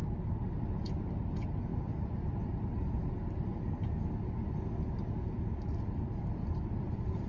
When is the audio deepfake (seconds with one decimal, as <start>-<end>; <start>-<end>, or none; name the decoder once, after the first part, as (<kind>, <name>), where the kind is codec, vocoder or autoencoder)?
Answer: 1.7-3.1 (vocoder, BigVGAN v2); 5.7-7.3